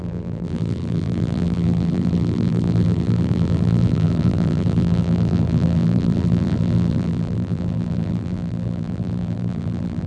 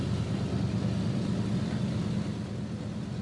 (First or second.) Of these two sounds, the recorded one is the second